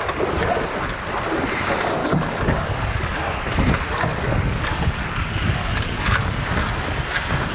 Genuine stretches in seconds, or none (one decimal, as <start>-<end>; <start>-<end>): 0.0-2.0; 3.2-4.1; 6.5-7.5